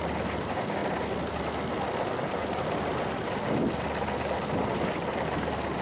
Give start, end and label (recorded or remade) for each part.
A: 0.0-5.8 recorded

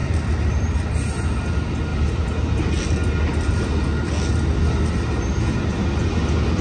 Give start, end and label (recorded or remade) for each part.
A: 0.0-1.9 recorded; 1.9-2.7 remade; 2.7-6.6 recorded

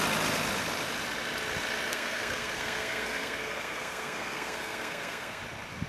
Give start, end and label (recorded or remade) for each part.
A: 0.0-1.9 recorded; 1.9-5.4 remade; 5.4-5.9 recorded

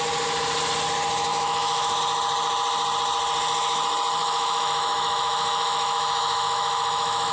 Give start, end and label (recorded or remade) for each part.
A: 0.0-1.3 recorded; 1.3-2.0 remade; 2.0-4.2 recorded; 4.2-7.3 remade